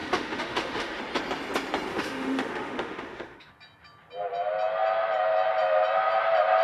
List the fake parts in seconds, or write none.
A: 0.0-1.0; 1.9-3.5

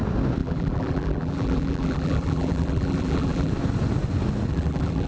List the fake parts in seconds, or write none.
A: 0.4-3.5; 4.5-5.1